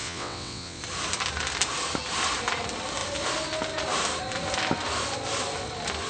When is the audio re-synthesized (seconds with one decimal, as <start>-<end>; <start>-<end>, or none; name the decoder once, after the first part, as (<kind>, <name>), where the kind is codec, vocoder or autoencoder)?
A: 0.0-0.8 (vocoder, WaveNeXt)